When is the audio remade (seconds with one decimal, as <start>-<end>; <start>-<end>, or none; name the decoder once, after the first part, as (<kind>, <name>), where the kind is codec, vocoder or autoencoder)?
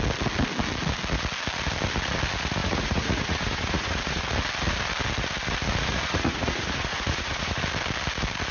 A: 2.6-4.2 (vocoder, Vocos); 5.9-7.6